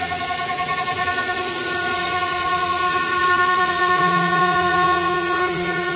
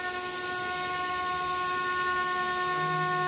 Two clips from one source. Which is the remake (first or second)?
first